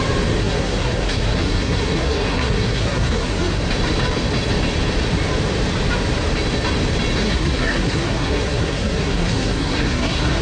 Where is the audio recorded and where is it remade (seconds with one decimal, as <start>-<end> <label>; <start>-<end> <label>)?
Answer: 0.0-0.4 recorded; 0.4-3.6 remade; 3.6-7.2 recorded; 7.2-10.4 remade